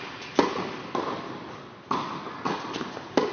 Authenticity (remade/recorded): recorded